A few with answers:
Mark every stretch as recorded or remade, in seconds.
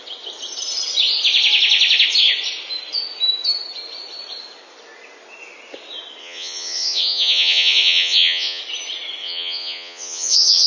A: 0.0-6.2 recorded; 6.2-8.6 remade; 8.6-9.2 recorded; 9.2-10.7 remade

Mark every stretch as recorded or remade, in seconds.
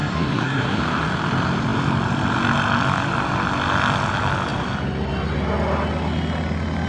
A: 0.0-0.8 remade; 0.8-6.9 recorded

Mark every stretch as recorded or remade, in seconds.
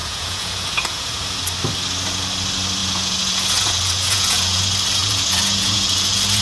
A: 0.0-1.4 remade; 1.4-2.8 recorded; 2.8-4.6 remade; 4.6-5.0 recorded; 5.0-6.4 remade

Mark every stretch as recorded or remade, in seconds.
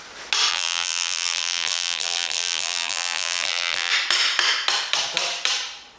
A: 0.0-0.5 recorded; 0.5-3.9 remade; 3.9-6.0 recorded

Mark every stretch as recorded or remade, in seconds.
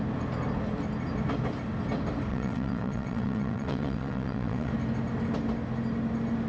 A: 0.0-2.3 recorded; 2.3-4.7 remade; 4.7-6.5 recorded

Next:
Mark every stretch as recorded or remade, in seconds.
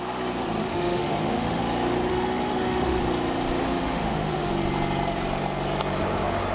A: 0.0-0.6 recorded; 0.6-1.6 remade; 1.6-2.1 recorded; 2.1-3.0 remade; 3.0-3.6 recorded; 3.6-4.5 remade; 4.5-6.5 recorded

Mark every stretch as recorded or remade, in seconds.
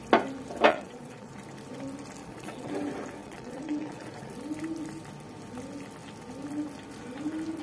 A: 0.0-0.7 recorded; 0.7-1.3 remade; 1.3-2.2 recorded; 2.2-2.7 remade; 2.7-3.2 recorded; 3.2-4.3 remade; 4.3-7.6 recorded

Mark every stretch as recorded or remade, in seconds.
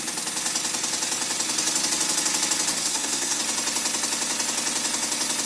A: 0.0-2.7 recorded; 2.7-3.4 remade; 3.4-5.5 recorded